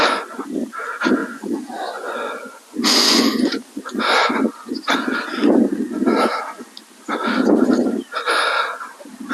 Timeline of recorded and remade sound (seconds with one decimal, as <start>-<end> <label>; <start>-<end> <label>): 0.0-1.2 recorded; 1.2-4.0 remade; 4.0-9.3 recorded